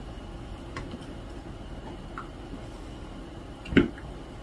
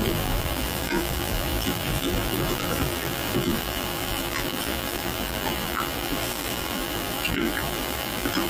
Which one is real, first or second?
first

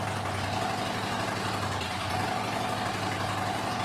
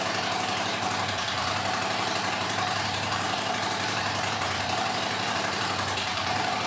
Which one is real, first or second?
first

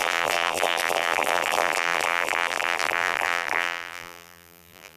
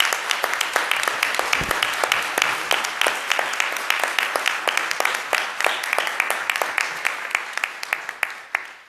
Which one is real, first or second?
second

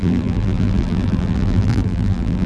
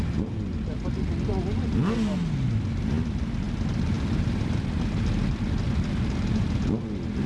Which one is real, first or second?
second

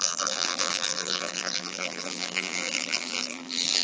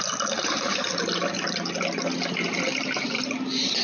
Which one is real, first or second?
second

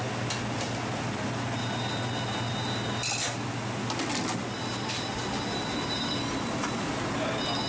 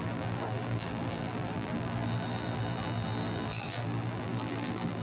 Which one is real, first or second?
first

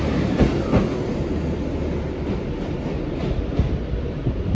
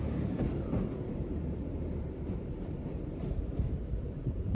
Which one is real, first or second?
first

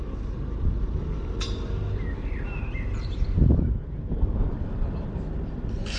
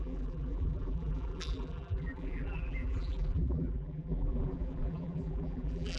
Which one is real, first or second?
first